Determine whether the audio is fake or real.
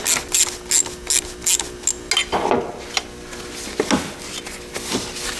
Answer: real